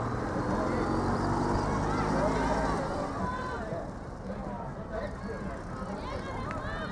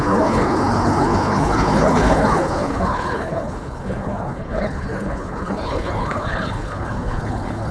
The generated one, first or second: second